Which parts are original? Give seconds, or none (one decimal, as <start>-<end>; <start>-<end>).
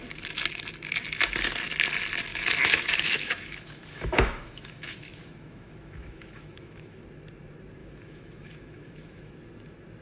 0.0-2.3; 7.0-7.8; 9.3-10.0